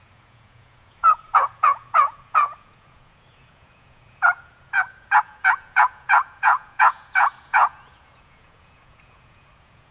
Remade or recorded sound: remade